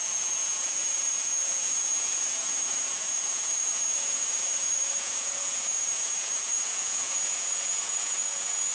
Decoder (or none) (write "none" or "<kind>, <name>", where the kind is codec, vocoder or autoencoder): vocoder, Vocos